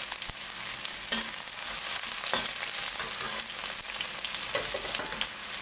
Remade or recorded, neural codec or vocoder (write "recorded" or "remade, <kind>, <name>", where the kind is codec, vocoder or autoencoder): recorded